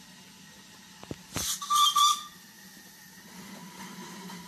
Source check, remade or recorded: recorded